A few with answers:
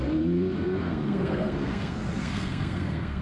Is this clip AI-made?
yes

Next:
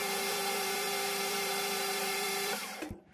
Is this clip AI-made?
yes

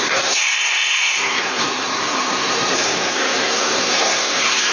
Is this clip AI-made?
yes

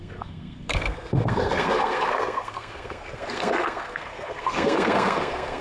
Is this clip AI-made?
yes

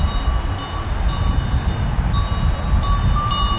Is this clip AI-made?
no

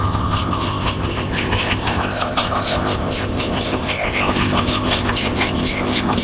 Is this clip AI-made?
yes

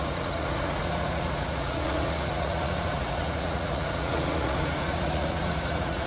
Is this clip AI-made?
yes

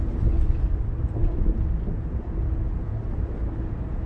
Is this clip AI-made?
no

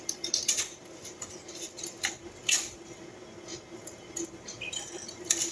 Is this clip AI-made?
no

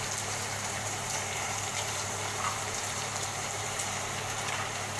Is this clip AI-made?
yes